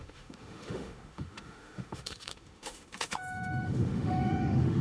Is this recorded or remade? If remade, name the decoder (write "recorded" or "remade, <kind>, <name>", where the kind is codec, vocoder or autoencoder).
remade, autoencoder, DAC-VAE